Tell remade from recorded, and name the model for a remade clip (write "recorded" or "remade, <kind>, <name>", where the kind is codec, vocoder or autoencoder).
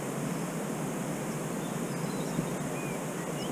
recorded